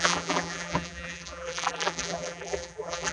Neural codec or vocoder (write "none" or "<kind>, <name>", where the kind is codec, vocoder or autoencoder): vocoder, BigVGAN v2